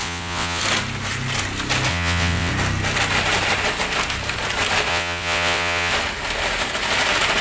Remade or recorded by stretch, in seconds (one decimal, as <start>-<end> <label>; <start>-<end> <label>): 0.0-0.6 remade; 0.6-1.9 recorded; 1.9-2.5 remade; 2.5-4.9 recorded; 4.9-5.9 remade; 5.9-7.4 recorded